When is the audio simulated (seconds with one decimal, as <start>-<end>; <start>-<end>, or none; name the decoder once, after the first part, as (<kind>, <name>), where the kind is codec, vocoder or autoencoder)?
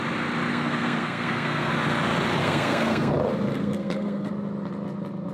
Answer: 0.5-1.7 (codec, SNAC); 2.4-3.1; 3.5-4.3